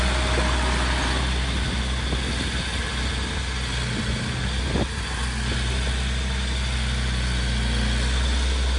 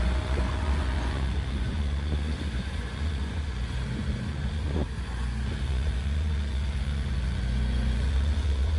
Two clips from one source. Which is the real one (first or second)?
first